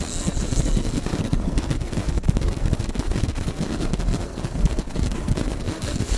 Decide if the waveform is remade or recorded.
remade